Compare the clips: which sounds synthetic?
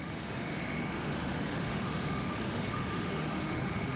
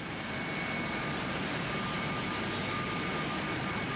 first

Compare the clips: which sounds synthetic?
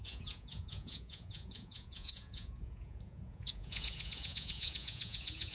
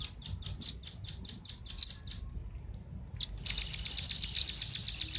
first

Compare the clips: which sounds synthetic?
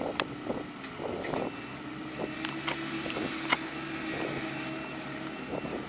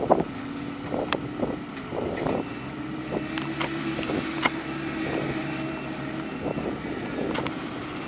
second